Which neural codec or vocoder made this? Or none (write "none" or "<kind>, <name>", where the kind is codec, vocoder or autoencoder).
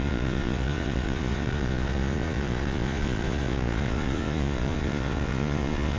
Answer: vocoder, Vocos